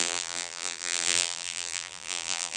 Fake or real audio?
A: fake